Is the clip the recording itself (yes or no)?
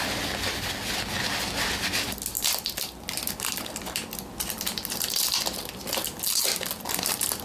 yes